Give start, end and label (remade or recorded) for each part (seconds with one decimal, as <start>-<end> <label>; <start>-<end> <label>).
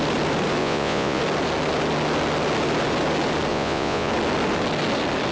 0.0-0.6 recorded; 0.6-1.2 remade; 1.2-3.5 recorded; 3.5-4.1 remade; 4.1-5.3 recorded